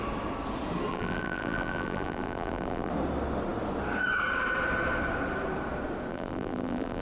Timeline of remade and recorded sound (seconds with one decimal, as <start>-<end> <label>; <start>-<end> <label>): 0.0-0.9 recorded; 0.9-2.9 remade; 2.9-6.1 recorded; 6.1-7.0 remade

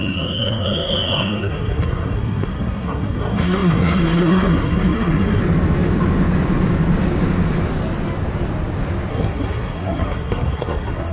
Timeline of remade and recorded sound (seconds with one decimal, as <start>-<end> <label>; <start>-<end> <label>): 0.0-5.4 remade; 5.4-9.1 recorded; 9.1-11.1 remade

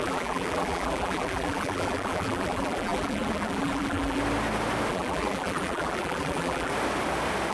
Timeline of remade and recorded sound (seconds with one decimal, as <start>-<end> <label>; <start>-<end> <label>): 0.0-4.2 remade; 4.2-4.9 recorded; 4.9-6.7 remade; 6.7-7.5 recorded

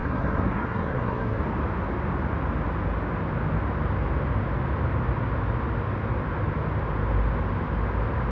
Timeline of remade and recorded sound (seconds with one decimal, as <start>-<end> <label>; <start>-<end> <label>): 0.0-1.4 remade; 1.4-8.3 recorded